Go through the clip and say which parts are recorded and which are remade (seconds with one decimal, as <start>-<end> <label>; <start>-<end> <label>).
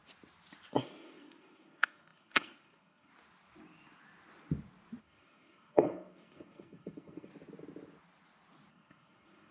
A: 0.0-0.7 recorded; 0.7-3.1 remade; 3.1-5.0 recorded; 5.0-7.3 remade; 7.3-8.7 recorded; 8.7-9.5 remade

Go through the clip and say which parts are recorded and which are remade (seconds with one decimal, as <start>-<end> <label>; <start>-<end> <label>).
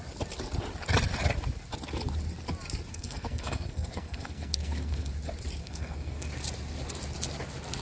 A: 0.0-2.9 recorded; 2.9-5.1 remade; 5.1-5.6 recorded; 5.6-6.3 remade; 6.3-7.8 recorded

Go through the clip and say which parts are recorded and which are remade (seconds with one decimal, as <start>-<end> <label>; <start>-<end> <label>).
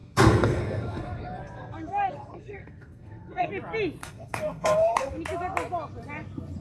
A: 0.0-3.5 remade; 3.5-4.0 recorded; 4.0-5.1 remade; 5.1-6.6 recorded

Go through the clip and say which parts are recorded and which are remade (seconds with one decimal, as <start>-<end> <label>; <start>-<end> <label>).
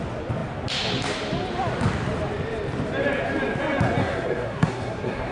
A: 0.0-4.0 recorded; 4.0-5.3 remade